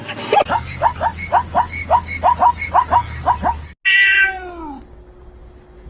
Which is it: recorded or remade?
recorded